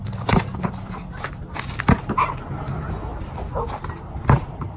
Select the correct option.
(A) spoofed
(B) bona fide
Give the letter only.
B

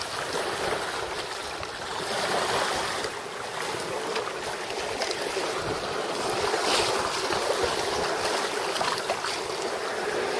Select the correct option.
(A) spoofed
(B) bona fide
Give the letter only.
B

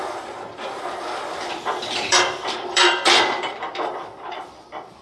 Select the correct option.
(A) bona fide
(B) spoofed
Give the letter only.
B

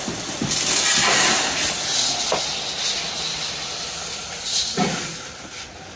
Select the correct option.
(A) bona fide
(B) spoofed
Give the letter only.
A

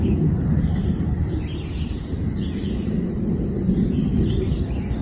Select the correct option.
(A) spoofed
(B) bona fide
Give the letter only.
A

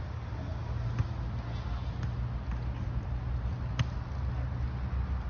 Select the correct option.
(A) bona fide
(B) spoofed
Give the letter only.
A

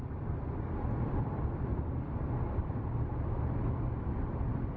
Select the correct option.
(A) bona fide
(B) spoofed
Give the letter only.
B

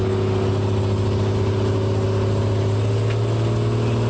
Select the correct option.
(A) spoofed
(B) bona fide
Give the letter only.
B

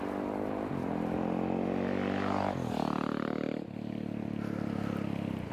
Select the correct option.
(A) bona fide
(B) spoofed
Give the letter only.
A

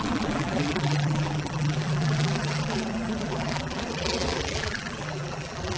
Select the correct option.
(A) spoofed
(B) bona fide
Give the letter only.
A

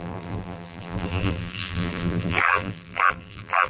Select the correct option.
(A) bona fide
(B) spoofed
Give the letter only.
B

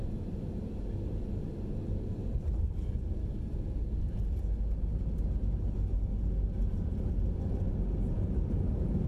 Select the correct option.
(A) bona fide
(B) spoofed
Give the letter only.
A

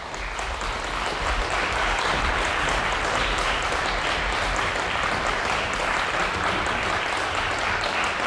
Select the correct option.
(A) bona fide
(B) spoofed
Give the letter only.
B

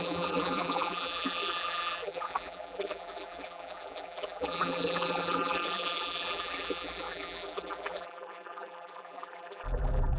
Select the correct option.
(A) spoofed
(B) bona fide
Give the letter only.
A